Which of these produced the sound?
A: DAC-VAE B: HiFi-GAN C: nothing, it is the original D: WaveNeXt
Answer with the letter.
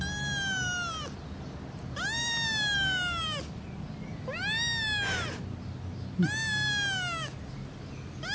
C